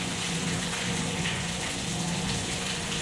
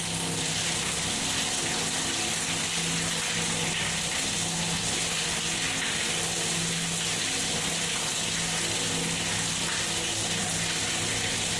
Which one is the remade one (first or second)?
first